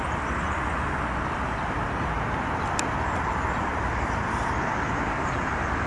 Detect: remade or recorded recorded